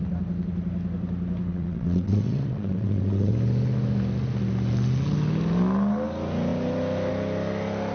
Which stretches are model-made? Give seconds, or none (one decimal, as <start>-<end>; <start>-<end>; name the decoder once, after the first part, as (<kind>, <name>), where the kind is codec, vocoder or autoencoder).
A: 1.5-3.3 (vocoder, WaveNeXt)